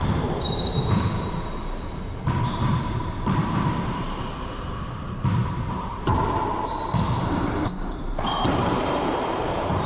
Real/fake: fake